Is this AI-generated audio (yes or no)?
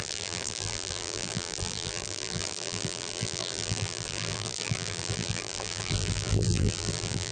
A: yes